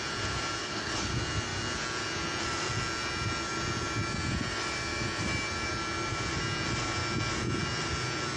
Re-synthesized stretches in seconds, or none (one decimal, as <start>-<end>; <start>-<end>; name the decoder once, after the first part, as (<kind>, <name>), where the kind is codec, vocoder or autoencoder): 0.6-1.1 (codec, HILCodec)